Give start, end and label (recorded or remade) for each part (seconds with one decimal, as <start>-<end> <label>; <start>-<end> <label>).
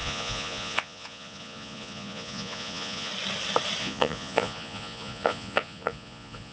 0.0-3.1 remade; 3.1-3.8 recorded; 3.8-6.5 remade